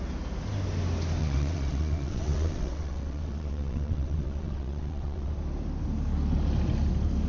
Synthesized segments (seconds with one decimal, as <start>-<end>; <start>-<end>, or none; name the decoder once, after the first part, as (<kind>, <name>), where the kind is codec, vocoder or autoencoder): 1.2-5.3 (vocoder, WaveNeXt)